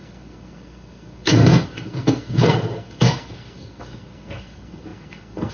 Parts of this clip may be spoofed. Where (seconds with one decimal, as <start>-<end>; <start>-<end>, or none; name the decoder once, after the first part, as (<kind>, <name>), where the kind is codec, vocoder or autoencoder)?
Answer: 0.0-5.5 (codec, SNAC)